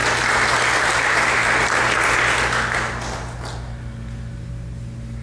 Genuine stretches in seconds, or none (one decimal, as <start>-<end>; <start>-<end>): 0.0-5.2